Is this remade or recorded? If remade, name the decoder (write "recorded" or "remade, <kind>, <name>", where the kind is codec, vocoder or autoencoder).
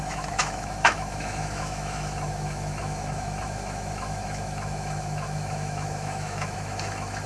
remade, autoencoder, DAC-VAE